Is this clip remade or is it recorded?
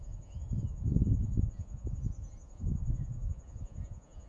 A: remade